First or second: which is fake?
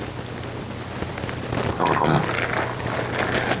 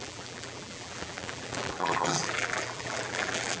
second